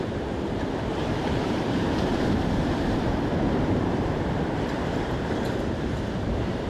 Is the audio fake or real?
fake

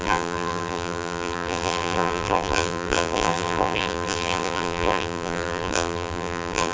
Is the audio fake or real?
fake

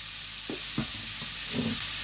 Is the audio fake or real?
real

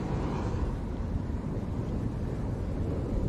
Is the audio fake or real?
real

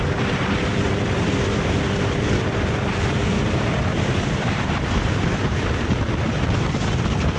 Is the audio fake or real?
fake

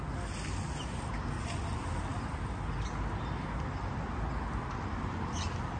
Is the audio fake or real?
real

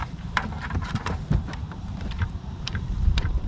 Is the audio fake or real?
fake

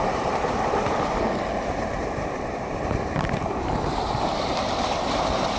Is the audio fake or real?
fake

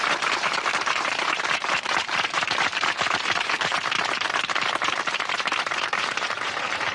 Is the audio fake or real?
fake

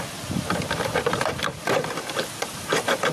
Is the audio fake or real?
fake